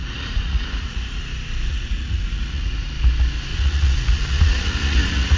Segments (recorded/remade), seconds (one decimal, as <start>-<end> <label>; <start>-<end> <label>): 0.0-1.2 remade; 1.2-1.7 recorded; 1.7-2.9 remade; 2.9-3.5 recorded; 3.5-5.4 remade